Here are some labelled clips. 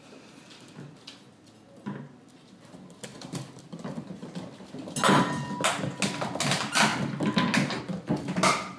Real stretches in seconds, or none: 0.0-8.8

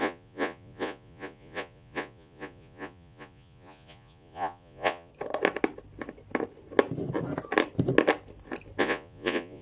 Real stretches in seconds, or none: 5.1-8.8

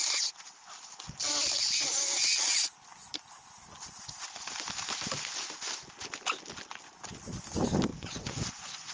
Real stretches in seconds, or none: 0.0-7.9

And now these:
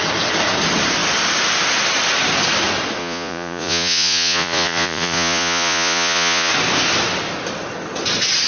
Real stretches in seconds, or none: 0.0-3.0; 6.5-8.5

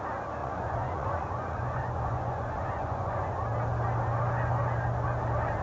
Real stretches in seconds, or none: 0.0-0.4; 3.4-5.6

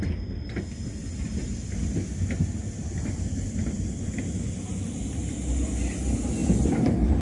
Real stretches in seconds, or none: 0.0-7.2

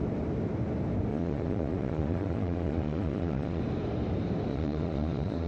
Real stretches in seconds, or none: 0.0-1.1; 3.6-4.5